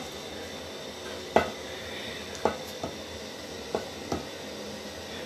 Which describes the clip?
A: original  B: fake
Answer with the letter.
A